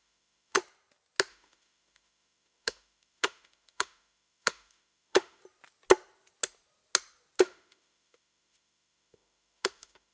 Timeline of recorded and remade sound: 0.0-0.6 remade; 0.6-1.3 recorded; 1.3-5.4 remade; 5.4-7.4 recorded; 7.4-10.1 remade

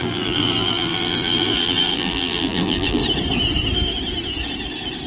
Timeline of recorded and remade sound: 0.0-3.0 remade; 3.0-5.1 recorded

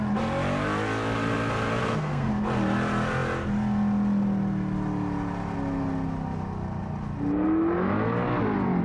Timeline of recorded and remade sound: 0.0-1.8 recorded; 1.8-2.3 remade; 2.3-8.8 recorded